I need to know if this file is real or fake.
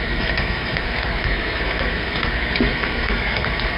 fake